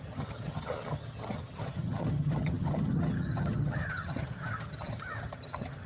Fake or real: fake